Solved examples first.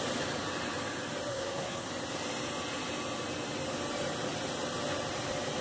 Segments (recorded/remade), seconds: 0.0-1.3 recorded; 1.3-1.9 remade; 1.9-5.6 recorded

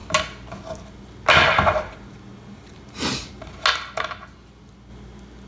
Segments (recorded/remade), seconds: 0.0-5.5 recorded

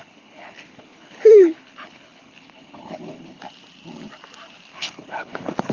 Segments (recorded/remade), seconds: 0.0-3.4 remade; 3.4-4.7 recorded; 4.7-5.7 remade